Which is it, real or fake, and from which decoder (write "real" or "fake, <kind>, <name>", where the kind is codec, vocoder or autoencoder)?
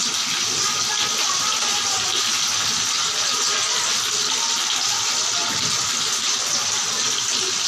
real